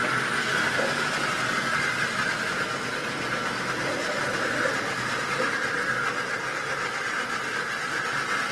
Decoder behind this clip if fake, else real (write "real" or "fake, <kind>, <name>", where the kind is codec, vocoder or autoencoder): real